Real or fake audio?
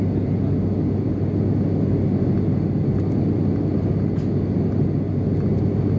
real